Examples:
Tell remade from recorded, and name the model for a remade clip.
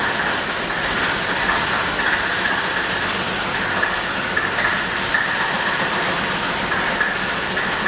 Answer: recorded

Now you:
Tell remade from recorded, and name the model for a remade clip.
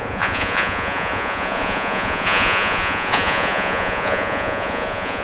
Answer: remade, vocoder, Vocos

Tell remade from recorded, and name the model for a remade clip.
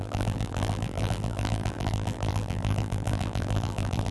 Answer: remade, vocoder, BigVGAN v2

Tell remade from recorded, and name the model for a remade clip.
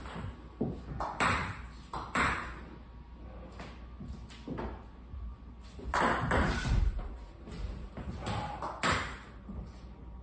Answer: recorded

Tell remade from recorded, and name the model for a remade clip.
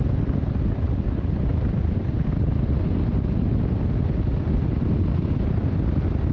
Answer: recorded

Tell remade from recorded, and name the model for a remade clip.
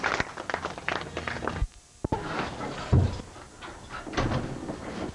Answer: recorded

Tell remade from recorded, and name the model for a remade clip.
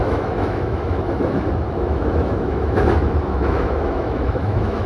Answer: remade, autoencoder, DAC-VAE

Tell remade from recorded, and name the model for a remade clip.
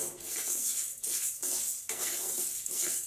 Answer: remade, codec, SNAC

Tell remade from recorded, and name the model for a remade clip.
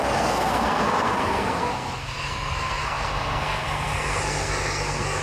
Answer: remade, codec, SNAC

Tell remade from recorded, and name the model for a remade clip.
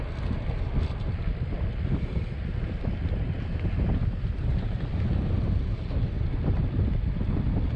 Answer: recorded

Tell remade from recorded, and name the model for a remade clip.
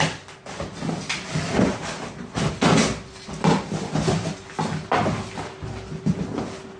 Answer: recorded